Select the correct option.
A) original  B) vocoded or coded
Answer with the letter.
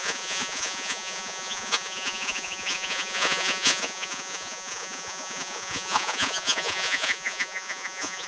B